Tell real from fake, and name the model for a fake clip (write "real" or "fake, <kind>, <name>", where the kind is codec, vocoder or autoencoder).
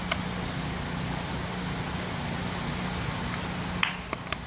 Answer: real